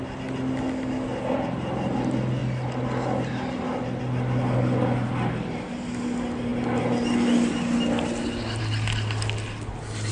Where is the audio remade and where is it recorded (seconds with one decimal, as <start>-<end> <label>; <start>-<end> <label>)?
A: 0.0-10.1 recorded